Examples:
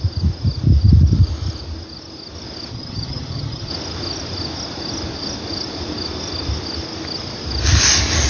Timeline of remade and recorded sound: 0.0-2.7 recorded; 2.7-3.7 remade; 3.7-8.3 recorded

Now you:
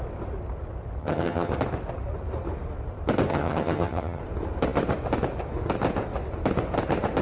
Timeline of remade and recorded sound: 0.0-1.0 recorded; 1.0-1.5 remade; 1.5-3.3 recorded; 3.3-4.2 remade; 4.2-7.2 recorded